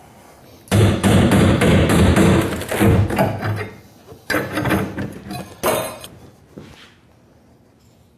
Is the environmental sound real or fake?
real